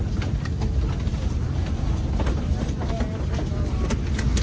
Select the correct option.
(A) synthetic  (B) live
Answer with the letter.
B